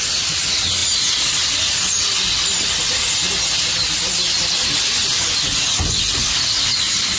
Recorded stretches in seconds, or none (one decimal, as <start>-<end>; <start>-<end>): 0.0-7.2